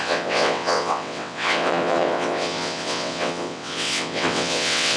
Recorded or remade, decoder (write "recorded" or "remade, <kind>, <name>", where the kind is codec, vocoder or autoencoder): remade, vocoder, WaveNeXt